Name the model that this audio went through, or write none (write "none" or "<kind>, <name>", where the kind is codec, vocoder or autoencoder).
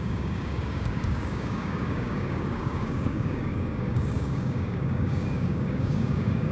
codec, DAC